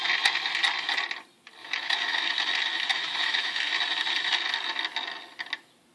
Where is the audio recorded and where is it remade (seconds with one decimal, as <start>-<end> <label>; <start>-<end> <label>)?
0.0-1.6 recorded; 1.6-2.3 remade; 2.3-2.9 recorded; 2.9-3.7 remade; 3.7-5.9 recorded